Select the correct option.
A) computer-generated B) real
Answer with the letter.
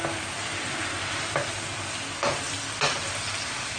B